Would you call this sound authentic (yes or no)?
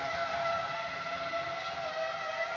yes